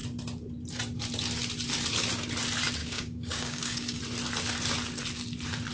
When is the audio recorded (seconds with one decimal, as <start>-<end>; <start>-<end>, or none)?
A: 0.0-2.8; 4.0-5.7